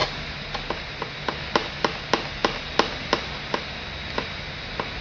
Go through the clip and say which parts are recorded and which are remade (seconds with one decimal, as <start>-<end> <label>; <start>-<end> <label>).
0.0-5.0 recorded